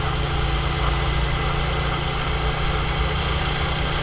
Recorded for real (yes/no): yes